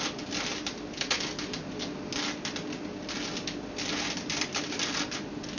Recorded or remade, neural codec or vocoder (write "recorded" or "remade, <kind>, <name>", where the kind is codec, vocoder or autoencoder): recorded